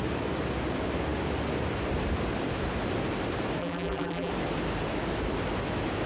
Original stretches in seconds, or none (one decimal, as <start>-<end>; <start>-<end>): 0.0-3.6; 4.3-6.1